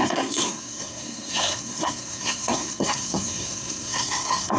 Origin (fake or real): fake